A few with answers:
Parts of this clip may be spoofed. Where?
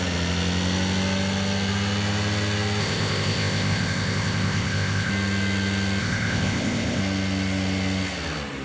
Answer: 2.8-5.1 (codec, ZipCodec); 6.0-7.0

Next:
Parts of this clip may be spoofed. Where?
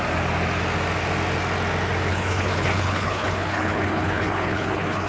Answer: 2.1-5.1 (codec, HILCodec)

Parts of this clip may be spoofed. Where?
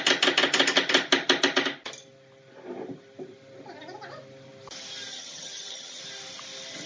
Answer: 5.1-6.0 (vocoder, HiFi-GAN)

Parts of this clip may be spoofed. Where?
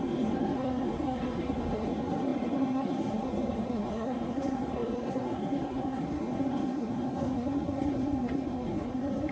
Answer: 0.0-9.3 (codec, SNAC)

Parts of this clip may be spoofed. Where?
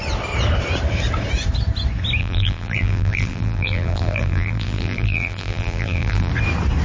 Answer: 2.2-6.3 (vocoder, BigVGAN v2)